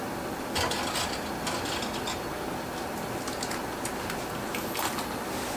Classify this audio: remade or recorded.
recorded